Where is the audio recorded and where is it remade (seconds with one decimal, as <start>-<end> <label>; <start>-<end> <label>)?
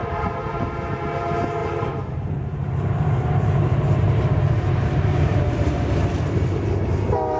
0.0-0.5 remade; 0.5-1.6 recorded; 1.6-6.0 remade; 6.0-7.4 recorded